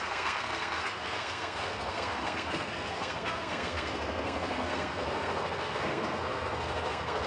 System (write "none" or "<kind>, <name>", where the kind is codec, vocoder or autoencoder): codec, SNAC